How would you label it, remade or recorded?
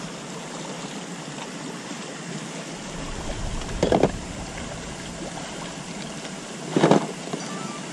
recorded